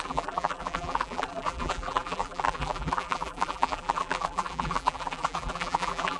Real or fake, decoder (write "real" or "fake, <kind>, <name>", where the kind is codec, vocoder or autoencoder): fake, vocoder, BigVGAN v2